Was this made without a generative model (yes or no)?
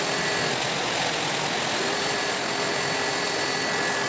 yes